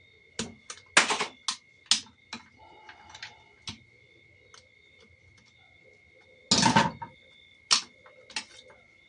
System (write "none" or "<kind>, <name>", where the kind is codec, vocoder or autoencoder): none